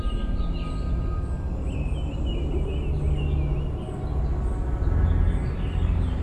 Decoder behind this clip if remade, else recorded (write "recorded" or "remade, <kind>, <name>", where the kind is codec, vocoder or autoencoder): recorded